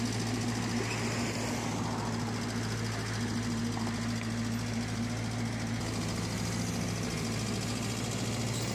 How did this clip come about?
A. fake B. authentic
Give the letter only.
B